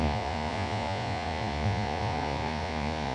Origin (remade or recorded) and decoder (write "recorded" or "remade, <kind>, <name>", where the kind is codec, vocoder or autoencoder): remade, vocoder, Vocos